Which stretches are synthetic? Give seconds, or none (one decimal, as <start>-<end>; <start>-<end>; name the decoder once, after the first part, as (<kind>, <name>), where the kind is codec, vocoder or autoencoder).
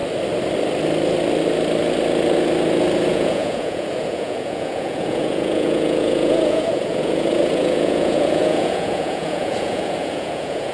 3.1-10.7 (vocoder, Vocos)